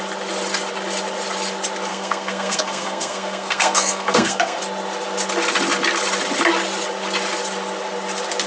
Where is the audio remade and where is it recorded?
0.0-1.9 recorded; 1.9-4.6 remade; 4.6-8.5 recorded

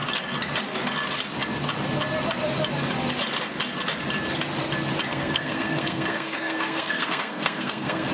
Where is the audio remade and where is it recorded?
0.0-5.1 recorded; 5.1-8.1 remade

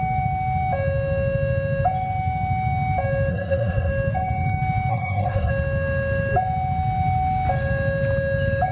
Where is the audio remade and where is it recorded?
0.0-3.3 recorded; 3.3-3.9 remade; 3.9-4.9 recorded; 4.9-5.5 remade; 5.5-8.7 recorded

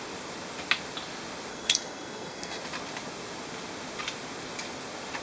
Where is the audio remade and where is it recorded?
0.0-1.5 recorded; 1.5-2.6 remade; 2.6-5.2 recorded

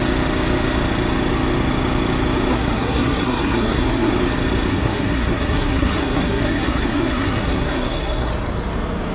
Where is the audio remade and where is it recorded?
0.0-2.5 recorded; 2.5-4.1 remade; 4.1-4.7 recorded; 4.7-8.3 remade; 8.3-9.1 recorded

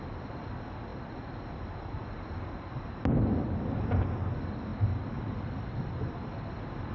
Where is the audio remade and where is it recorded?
0.0-6.9 recorded